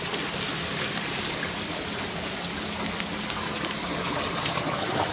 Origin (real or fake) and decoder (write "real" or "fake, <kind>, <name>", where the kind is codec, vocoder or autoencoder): real